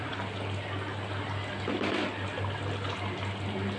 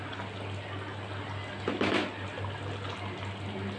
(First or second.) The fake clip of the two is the first